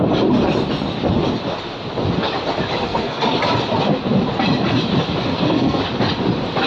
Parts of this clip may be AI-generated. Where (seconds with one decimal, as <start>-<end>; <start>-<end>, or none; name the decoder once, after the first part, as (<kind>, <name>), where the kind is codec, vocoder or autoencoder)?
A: 2.8-3.4 (codec, SNAC); 5.3-5.8